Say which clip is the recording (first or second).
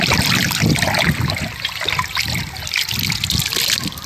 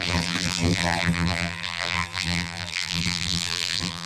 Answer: first